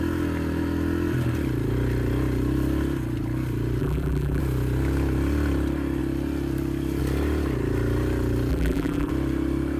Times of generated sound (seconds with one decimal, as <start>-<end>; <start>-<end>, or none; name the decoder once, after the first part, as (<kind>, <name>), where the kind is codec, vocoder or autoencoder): 3.8-4.4 (vocoder, BigVGAN v2); 8.5-9.1